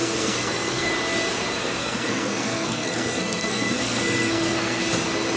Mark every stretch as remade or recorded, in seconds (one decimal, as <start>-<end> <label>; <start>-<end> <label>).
0.0-0.9 remade; 0.9-1.6 recorded; 1.6-4.8 remade; 4.8-5.4 recorded